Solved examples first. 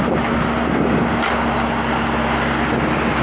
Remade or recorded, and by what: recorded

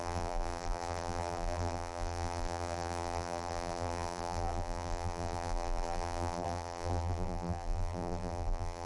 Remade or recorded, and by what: remade, vocoder, BigVGAN v2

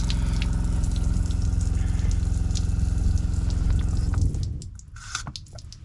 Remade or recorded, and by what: recorded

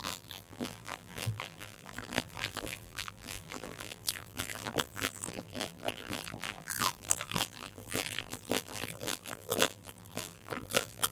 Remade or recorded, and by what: remade, vocoder, BigVGAN v2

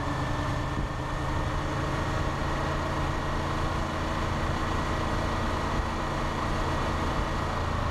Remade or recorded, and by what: recorded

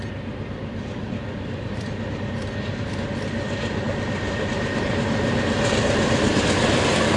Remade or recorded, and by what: recorded